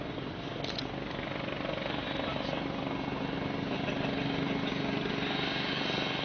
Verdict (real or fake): real